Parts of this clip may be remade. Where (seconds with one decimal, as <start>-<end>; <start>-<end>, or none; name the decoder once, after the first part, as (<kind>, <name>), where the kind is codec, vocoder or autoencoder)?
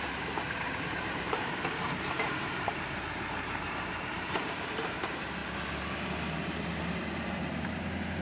0.0-5.4 (vocoder, BigVGAN v2); 6.4-8.2